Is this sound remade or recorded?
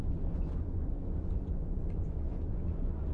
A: remade